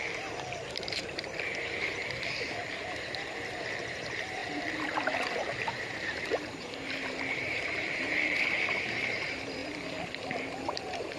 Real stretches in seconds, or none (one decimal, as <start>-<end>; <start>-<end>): 9.6-10.4